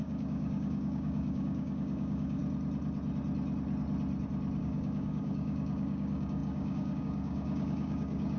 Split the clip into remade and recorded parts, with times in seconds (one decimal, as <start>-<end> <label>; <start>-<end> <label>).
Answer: 0.0-2.4 remade; 2.4-4.6 recorded; 4.6-8.4 remade

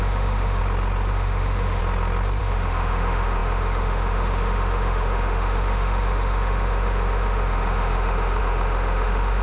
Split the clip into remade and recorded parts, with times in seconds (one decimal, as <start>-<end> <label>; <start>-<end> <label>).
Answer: 0.0-0.6 remade; 0.6-1.1 recorded; 1.1-1.8 remade; 1.8-2.4 recorded; 2.4-9.4 remade

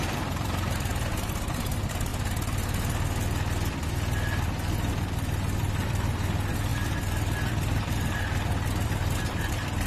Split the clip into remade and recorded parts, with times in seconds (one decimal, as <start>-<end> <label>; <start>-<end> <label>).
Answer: 0.0-0.9 remade; 0.9-1.7 recorded; 1.7-2.1 remade; 2.1-4.9 recorded; 4.9-9.9 remade

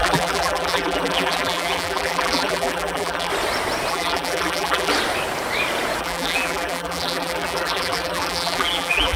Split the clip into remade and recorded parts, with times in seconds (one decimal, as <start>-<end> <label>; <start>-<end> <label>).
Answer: 0.0-3.3 remade; 3.3-3.9 recorded; 3.9-4.9 remade; 4.9-6.0 recorded; 6.0-9.2 remade

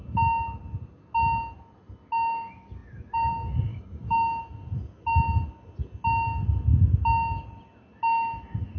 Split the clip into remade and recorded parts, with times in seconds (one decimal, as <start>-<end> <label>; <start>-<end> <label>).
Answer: 0.0-3.7 recorded; 3.7-4.4 remade; 4.4-8.8 recorded

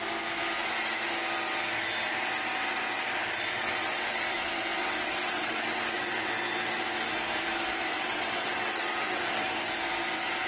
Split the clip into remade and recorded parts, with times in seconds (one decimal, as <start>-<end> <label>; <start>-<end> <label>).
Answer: 0.0-3.5 recorded; 3.5-4.2 remade; 4.2-4.8 recorded; 4.8-6.3 remade; 6.3-7.9 recorded; 7.9-9.3 remade; 9.3-10.5 recorded

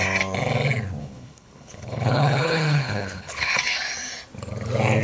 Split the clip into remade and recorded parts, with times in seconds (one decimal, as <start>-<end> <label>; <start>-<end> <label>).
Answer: 0.0-1.0 recorded; 1.0-3.5 remade; 3.5-5.0 recorded

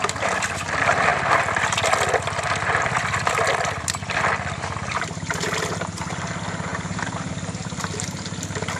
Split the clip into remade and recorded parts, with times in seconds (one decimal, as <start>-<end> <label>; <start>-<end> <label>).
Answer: 0.0-6.7 recorded; 6.7-7.3 remade; 7.3-8.8 recorded